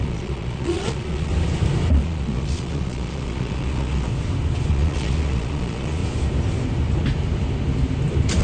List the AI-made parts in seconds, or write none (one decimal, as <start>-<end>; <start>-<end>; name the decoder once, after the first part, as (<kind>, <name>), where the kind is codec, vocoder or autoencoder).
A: 0.0-1.3 (vocoder, Vocos); 1.9-4.1; 4.7-6.0